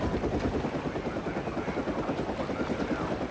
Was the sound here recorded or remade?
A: recorded